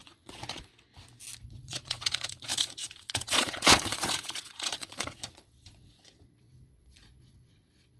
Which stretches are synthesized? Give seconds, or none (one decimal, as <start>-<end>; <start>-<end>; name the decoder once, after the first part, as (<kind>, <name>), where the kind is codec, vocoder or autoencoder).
0.0-0.7 (vocoder, Vocos); 1.4-8.0